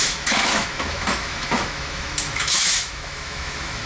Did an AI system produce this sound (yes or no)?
yes